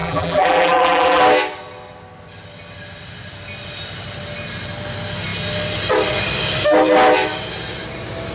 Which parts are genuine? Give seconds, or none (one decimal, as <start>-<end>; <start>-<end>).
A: 1.2-8.3